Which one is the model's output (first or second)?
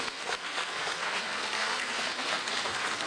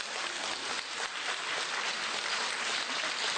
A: first